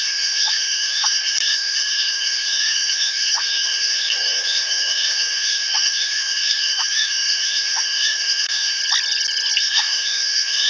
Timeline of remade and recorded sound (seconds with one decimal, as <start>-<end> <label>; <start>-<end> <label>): 0.0-8.8 remade; 8.8-9.6 recorded; 9.6-10.7 remade